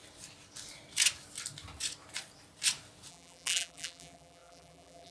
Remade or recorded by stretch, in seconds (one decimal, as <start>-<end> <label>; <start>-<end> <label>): 0.0-3.1 recorded; 3.1-5.1 remade